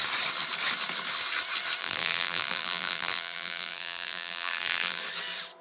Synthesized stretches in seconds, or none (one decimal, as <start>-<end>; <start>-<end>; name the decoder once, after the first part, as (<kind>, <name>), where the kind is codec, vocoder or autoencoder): 1.8-5.0 (vocoder, BigVGAN v2)